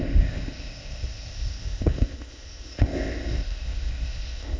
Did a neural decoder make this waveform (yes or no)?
yes